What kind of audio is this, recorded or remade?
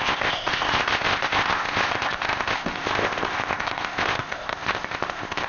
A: remade